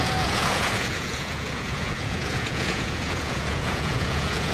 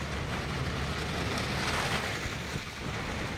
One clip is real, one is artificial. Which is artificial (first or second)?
first